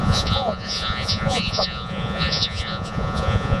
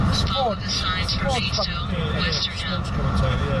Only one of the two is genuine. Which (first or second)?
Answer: second